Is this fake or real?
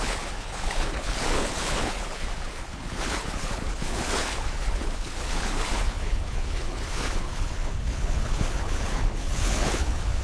fake